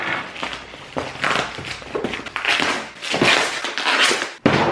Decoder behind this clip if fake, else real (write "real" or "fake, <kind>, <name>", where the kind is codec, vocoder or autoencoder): real